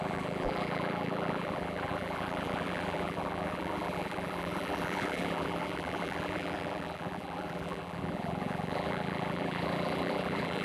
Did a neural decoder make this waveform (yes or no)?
yes